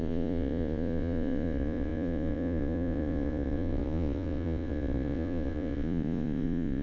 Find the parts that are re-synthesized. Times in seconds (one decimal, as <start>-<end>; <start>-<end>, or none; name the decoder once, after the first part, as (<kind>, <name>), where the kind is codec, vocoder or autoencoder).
0.0-6.8 (vocoder, Vocos)